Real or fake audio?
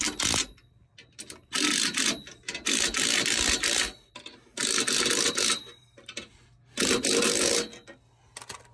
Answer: real